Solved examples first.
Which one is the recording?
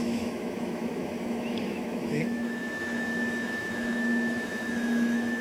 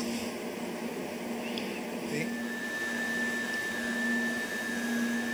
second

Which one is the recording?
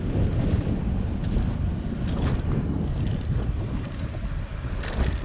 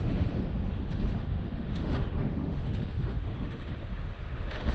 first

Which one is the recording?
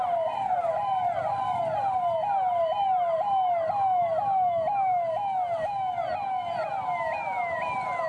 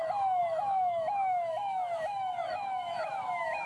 first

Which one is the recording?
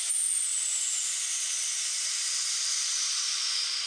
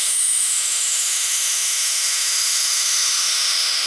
first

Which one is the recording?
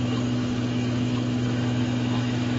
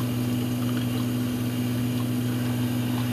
second